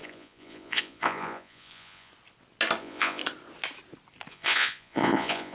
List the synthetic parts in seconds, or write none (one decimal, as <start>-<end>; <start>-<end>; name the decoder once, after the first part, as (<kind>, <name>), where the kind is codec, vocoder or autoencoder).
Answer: 0.0-2.1 (vocoder, Vocos); 2.8-3.2; 4.3-5.5